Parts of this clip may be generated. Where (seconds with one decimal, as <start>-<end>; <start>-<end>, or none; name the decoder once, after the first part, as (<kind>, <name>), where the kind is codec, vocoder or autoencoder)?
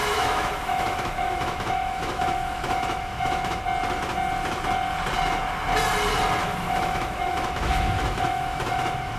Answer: 0.0-3.6 (autoencoder, DAC-VAE); 6.4-9.2